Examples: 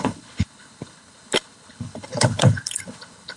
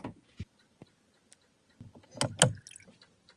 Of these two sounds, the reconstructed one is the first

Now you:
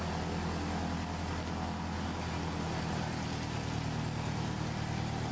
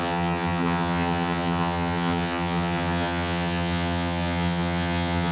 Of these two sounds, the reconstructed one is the second